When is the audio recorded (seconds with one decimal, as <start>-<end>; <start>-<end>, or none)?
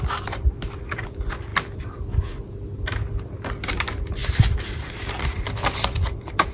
0.0-4.2; 5.5-6.5